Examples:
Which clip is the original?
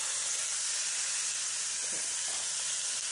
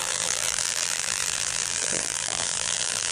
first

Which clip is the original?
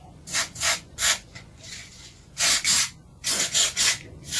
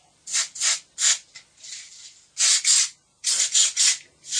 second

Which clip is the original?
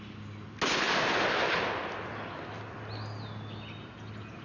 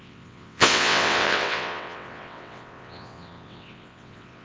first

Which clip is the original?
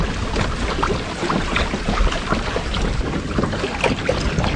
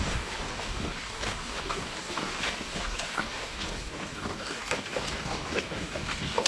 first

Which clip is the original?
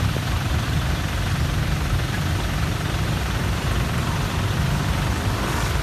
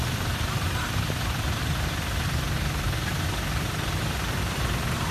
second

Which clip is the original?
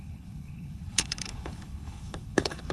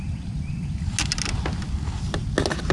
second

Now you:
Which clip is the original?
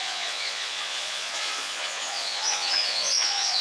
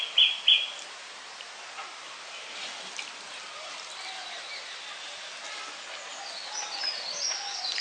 second